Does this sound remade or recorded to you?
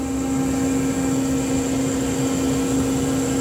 recorded